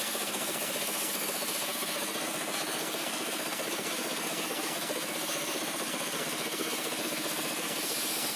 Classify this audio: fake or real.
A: fake